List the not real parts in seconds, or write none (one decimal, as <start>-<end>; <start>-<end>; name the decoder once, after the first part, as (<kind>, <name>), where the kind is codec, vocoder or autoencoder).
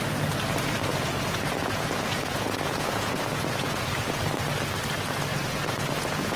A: 0.9-4.1 (vocoder, Vocos); 5.3-6.4